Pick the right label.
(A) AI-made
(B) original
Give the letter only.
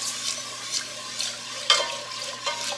B